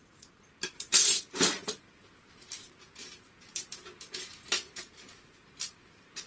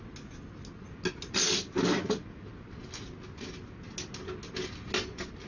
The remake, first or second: first